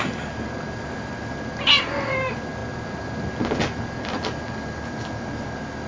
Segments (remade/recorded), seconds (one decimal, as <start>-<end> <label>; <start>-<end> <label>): 0.0-5.9 recorded